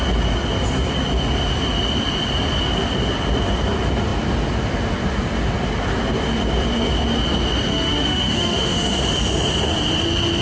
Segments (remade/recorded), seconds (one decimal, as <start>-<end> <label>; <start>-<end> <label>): 0.0-7.7 recorded; 7.7-9.0 remade; 9.0-10.4 recorded